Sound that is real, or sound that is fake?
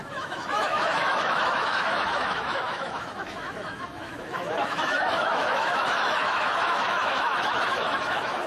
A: fake